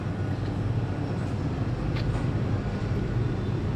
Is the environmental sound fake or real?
real